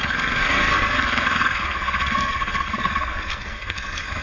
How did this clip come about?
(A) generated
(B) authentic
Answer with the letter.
A